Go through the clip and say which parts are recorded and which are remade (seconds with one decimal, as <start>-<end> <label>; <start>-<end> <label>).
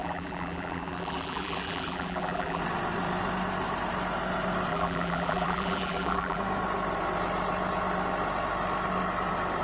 0.0-2.6 remade; 2.6-4.7 recorded; 4.7-6.4 remade; 6.4-9.6 recorded